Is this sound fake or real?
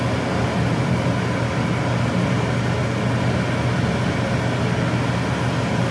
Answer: real